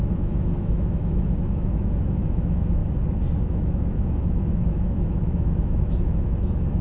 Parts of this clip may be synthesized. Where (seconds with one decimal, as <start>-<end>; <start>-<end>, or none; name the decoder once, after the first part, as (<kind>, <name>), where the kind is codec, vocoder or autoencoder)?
0.0-2.8 (autoencoder, DAC-VAE); 3.4-6.8